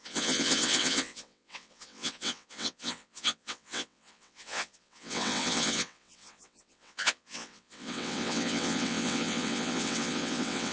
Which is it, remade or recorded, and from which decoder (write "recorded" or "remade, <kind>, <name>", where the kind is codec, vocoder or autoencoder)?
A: remade, vocoder, WaveNeXt